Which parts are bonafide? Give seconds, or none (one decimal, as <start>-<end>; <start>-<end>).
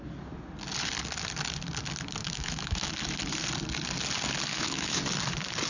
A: 0.0-2.2; 2.9-4.5; 5.0-5.7